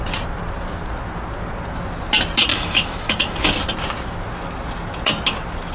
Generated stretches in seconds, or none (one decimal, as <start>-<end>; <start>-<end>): 2.5-3.5